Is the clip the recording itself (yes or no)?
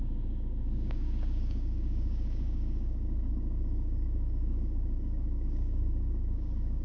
no